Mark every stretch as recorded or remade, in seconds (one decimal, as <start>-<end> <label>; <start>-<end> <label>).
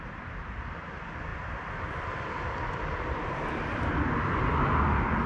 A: 0.0-5.3 recorded